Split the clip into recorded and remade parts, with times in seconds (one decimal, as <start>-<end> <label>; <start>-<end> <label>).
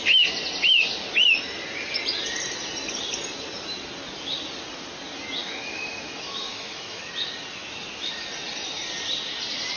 0.0-5.4 recorded; 5.4-7.1 remade; 7.1-9.8 recorded